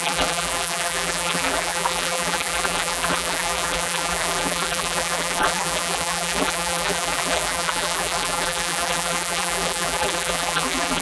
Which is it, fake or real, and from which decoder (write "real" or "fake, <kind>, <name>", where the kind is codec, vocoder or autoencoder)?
fake, vocoder, BigVGAN v2